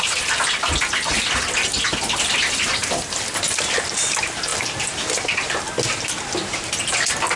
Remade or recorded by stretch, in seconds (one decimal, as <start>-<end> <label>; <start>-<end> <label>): 0.0-7.4 recorded